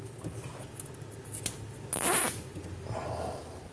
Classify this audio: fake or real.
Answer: real